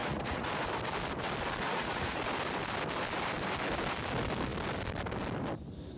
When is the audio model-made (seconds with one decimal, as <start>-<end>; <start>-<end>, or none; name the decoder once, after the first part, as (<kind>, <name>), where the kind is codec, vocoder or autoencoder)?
0.0-0.5 (vocoder, Vocos); 1.7-2.2